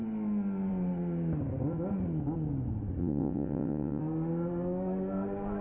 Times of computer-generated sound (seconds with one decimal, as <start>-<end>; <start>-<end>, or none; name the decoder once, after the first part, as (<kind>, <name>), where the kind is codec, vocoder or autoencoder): 3.0-4.0 (vocoder, WaveNeXt)